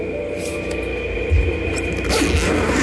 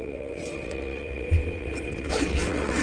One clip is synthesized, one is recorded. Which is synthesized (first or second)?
second